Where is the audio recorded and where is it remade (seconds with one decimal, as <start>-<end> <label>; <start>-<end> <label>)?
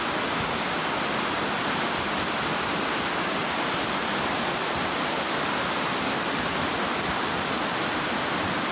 0.0-8.7 recorded